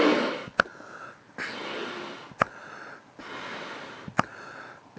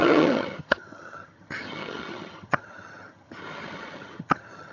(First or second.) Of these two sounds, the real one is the first